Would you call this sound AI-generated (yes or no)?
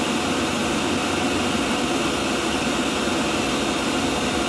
no